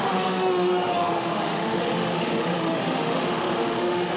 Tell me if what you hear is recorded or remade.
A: remade